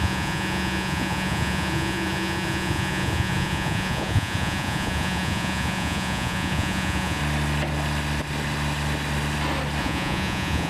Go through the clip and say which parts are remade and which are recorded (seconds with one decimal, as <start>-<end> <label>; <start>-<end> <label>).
0.0-7.2 remade; 7.2-9.8 recorded; 9.8-10.7 remade

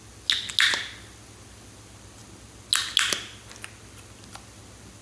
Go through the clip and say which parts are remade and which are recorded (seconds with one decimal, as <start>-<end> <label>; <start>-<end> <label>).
0.0-5.0 recorded

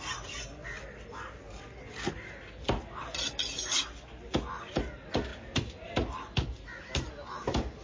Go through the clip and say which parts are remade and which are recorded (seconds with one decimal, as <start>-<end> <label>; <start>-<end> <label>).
0.0-7.8 recorded

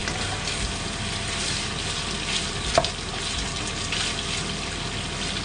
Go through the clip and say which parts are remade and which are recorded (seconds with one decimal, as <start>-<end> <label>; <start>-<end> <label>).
0.0-5.4 recorded